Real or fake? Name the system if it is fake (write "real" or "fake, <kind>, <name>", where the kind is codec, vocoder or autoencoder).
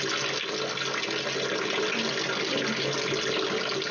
real